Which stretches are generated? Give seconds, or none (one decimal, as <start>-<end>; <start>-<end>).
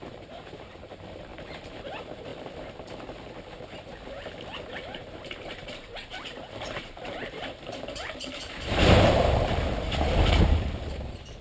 0.0-2.3; 4.7-5.9; 6.7-11.4